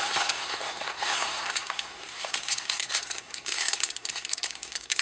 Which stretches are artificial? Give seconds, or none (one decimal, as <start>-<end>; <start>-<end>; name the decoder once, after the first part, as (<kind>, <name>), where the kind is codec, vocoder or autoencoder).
0.0-5.0 (codec, SNAC)